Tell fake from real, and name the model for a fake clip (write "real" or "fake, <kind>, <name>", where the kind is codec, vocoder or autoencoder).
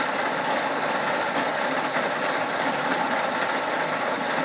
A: real